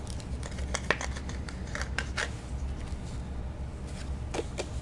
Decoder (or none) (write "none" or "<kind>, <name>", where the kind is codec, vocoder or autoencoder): none